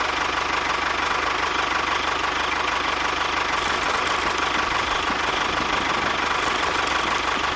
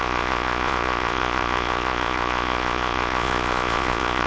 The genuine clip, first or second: first